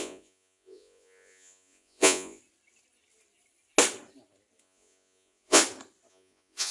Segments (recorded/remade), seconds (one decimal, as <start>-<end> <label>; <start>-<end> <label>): 0.0-2.4 remade; 2.4-4.6 recorded; 4.6-5.6 remade; 5.6-6.1 recorded; 6.1-6.7 remade